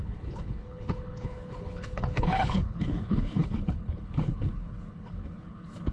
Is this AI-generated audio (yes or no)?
yes